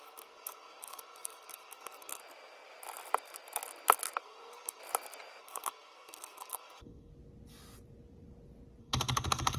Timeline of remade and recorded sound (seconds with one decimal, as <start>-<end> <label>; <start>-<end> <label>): 0.0-2.2 remade; 2.2-4.2 recorded; 4.2-4.8 remade; 4.8-5.4 recorded; 5.4-7.1 remade; 7.1-8.8 recorded; 8.8-9.6 remade

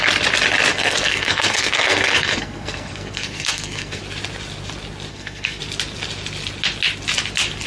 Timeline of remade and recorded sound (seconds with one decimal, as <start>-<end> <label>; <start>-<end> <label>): 0.0-0.7 recorded; 0.7-4.0 remade; 4.0-5.1 recorded; 5.1-5.6 remade; 5.6-7.7 recorded

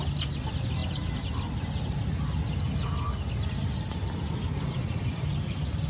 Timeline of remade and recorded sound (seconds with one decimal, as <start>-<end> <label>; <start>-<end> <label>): 0.0-5.9 recorded

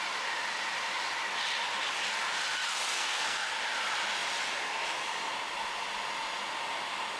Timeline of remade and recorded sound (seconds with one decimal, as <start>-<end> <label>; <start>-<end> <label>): 0.0-2.9 recorded; 2.9-3.5 remade; 3.5-7.2 recorded

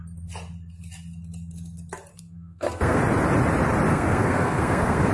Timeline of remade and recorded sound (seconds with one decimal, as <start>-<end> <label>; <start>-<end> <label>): 0.0-2.1 recorded; 2.1-3.0 remade; 3.0-3.9 recorded; 3.9-5.1 remade